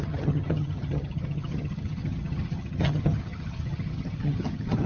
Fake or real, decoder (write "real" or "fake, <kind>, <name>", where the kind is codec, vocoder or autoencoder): fake, vocoder, HiFi-GAN